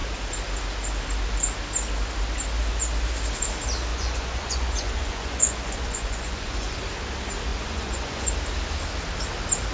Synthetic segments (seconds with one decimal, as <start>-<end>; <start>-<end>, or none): 3.9-6.8; 7.5-8.3